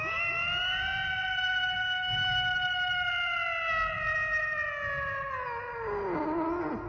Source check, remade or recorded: recorded